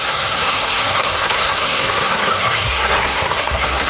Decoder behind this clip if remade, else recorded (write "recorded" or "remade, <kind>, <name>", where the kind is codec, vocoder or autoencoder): remade, codec, SNAC